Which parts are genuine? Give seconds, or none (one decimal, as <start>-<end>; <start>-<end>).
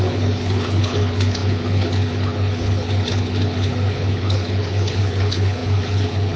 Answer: none